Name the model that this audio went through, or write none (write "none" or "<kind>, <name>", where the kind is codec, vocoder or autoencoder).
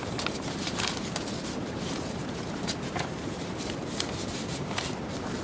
vocoder, BigVGAN v2